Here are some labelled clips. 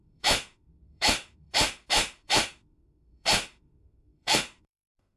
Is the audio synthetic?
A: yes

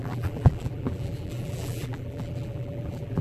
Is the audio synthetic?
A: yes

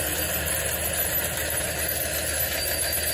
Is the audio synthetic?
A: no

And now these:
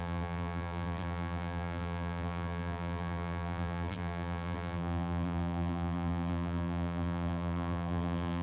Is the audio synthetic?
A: yes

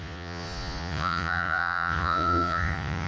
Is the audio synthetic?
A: yes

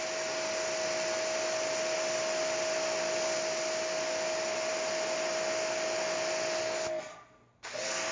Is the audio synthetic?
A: no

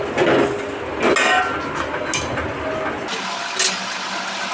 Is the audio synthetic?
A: no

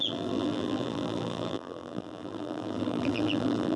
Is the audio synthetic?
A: yes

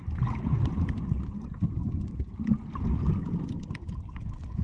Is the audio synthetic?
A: no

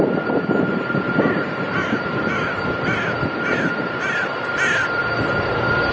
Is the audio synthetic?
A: no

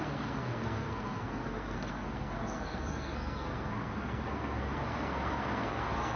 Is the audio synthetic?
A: yes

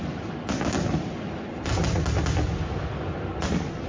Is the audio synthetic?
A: no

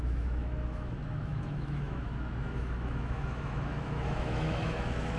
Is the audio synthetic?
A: yes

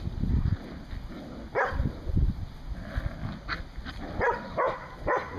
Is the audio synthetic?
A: no